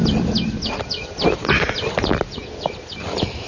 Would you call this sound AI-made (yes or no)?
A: no